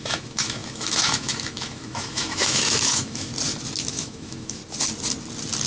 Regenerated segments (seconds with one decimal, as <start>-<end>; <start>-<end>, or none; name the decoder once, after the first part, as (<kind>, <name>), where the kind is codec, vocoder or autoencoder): 0.0-3.3 (autoencoder, DAC-VAE); 3.9-4.6